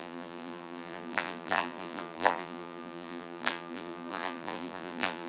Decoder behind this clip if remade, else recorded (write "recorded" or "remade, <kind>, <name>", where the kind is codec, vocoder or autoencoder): remade, vocoder, BigVGAN v2